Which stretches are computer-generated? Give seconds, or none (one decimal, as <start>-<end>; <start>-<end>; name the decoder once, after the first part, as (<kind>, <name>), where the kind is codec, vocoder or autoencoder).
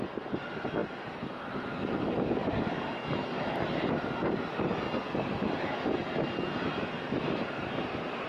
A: none